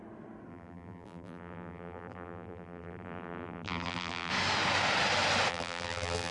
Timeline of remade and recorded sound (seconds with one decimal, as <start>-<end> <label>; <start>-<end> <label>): 0.0-0.5 recorded; 0.5-4.3 remade; 4.3-5.5 recorded; 5.5-6.3 remade